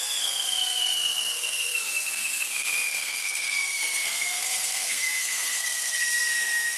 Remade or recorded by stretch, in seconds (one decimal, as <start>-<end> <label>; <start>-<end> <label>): 0.0-6.8 remade